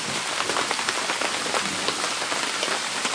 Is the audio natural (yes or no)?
yes